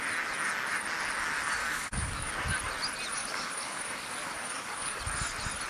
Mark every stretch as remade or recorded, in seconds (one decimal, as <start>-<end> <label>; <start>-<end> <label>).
0.0-1.6 recorded; 1.6-2.3 remade; 2.3-3.2 recorded; 3.2-5.0 remade; 5.0-5.7 recorded